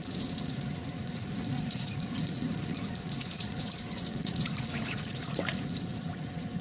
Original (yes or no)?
no